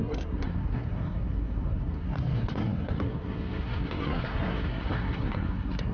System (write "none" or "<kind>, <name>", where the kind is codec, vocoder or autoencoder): codec, SNAC